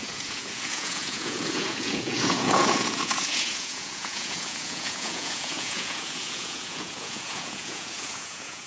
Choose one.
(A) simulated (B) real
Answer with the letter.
A